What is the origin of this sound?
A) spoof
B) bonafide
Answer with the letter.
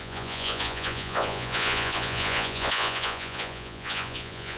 A